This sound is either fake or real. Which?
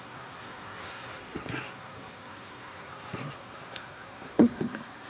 fake